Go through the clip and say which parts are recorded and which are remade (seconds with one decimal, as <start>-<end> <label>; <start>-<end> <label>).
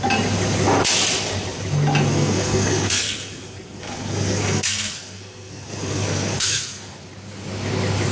0.0-2.1 recorded; 2.1-7.0 remade; 7.0-8.1 recorded